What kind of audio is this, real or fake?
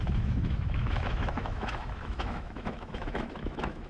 fake